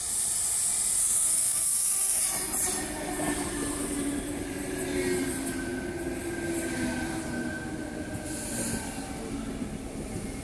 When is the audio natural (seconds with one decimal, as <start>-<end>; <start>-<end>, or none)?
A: 0.0-1.0; 2.2-10.4

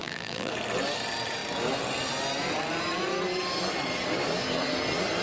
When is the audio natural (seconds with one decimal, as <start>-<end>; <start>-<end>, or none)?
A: 0.5-5.2

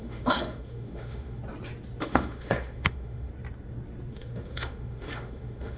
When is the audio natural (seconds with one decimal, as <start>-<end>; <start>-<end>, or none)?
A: 1.4-2.0; 3.3-4.1

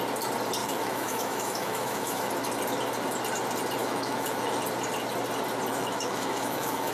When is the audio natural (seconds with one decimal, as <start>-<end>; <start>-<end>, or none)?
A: 0.0-0.6; 2.3-3.8; 4.6-5.7

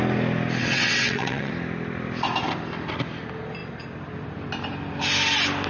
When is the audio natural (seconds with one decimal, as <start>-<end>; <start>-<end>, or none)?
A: 0.0-0.6; 1.5-5.7

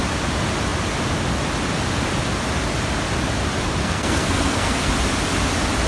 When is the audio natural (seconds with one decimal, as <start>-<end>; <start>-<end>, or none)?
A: 0.0-3.8; 4.9-5.9

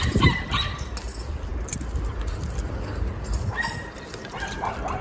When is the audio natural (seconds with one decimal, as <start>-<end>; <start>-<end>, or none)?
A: 0.0-5.0

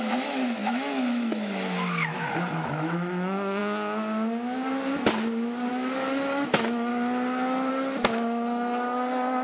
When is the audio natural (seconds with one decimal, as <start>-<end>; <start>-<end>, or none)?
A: 3.6-5.7; 6.9-7.7